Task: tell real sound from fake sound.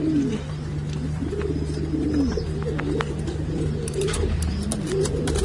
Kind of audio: fake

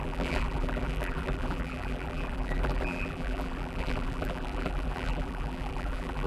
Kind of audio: fake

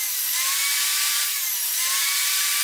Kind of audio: fake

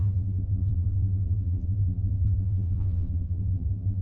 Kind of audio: fake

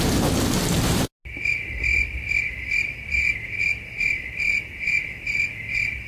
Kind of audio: real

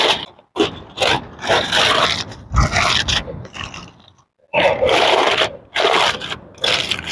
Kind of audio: real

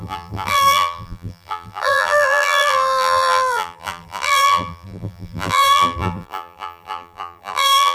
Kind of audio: fake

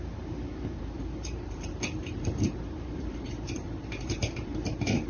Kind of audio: fake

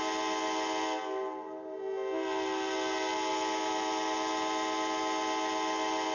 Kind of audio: real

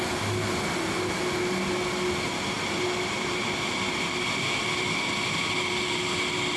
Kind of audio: real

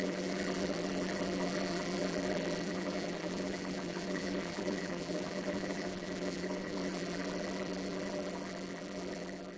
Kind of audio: fake